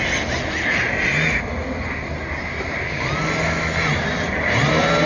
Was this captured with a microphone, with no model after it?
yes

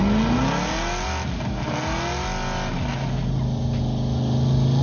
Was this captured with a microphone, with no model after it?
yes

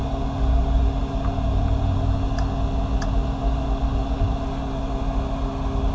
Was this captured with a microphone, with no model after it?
yes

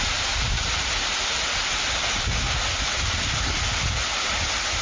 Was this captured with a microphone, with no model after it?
yes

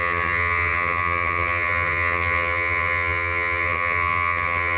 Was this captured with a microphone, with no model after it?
no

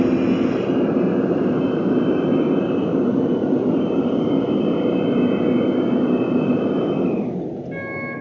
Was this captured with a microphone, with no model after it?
yes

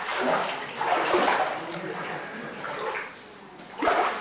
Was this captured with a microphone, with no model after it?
yes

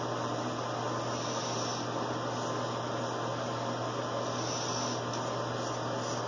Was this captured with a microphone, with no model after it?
yes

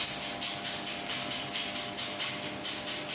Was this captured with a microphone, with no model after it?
yes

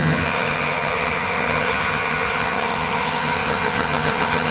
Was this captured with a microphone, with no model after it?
no